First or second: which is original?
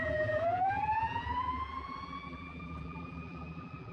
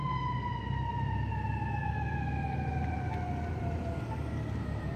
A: second